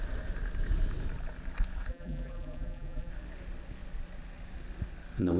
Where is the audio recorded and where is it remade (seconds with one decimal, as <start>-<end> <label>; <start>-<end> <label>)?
0.0-1.9 recorded; 1.9-3.1 remade; 3.1-5.4 recorded